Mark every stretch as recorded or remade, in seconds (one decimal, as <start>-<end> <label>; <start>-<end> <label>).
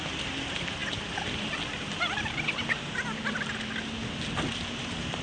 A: 0.0-5.2 recorded